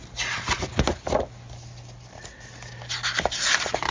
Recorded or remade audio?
recorded